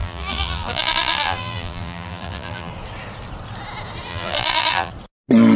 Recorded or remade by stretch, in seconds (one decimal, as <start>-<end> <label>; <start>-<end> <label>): 0.0-2.7 remade; 2.7-4.1 recorded; 4.1-4.9 remade; 4.9-5.6 recorded